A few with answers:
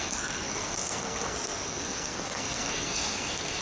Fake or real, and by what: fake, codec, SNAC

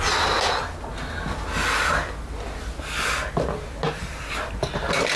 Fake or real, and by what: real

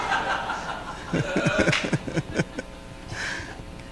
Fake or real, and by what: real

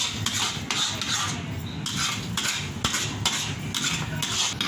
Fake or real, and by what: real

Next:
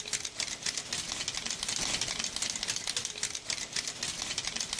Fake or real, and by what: real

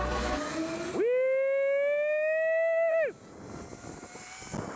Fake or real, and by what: real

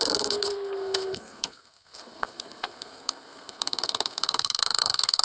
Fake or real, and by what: fake, codec, SNAC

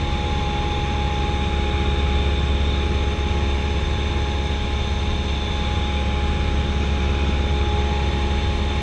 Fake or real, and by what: real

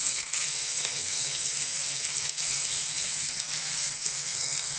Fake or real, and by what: fake, codec, SNAC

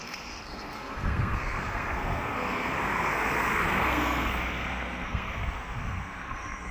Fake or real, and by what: fake, codec, SNAC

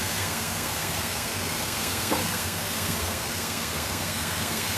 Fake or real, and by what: fake, codec, SNAC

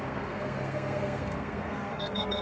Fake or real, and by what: fake, codec, SNAC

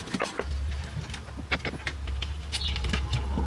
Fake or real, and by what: real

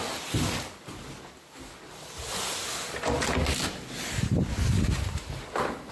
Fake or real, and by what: real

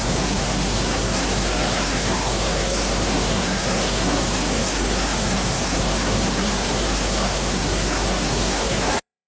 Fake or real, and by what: fake, codec, SNAC